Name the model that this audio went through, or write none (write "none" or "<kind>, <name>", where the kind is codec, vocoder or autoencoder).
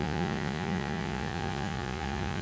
vocoder, Vocos